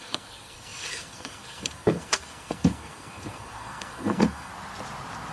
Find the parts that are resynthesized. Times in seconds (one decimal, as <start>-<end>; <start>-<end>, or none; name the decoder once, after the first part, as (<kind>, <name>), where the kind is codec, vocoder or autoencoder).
0.0-4.5 (codec, SNAC)